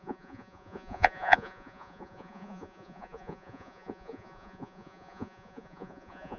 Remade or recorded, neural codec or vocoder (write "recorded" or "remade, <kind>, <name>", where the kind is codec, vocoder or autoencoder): remade, vocoder, Vocos